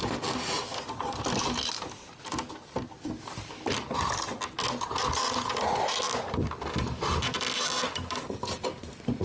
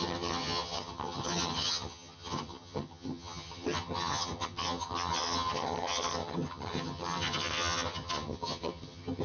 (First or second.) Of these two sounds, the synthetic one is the second